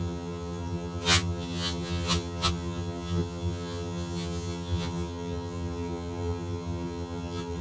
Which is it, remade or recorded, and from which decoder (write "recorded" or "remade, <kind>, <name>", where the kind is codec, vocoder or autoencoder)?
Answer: remade, vocoder, HiFi-GAN